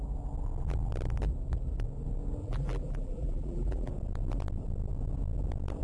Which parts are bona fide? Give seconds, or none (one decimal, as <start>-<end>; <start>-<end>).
0.0-2.4; 3.9-5.8